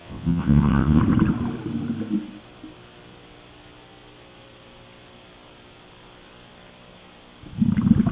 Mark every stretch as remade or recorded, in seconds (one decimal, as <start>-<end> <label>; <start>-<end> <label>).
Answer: 0.0-1.0 remade; 1.0-8.1 recorded